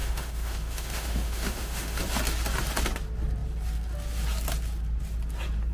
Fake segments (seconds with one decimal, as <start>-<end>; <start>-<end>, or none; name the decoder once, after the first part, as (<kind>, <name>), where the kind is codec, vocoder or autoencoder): 0.0-2.0 (autoencoder, DAC-VAE)